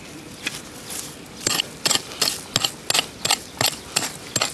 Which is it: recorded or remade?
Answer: recorded